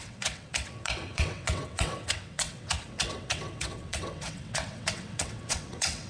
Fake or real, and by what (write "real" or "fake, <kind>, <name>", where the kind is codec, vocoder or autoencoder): fake, vocoder, WaveNeXt